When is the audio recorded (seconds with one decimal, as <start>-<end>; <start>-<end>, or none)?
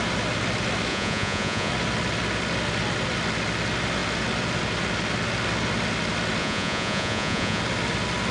0.0-0.9; 1.7-6.4; 7.6-8.3